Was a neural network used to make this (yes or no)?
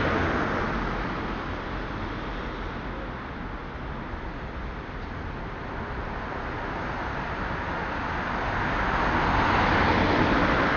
no